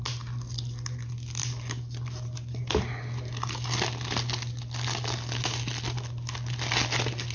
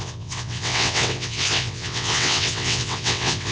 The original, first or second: first